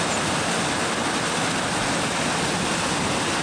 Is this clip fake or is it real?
real